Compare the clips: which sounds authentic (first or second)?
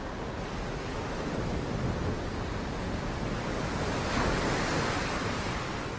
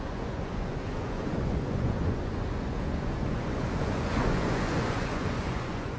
first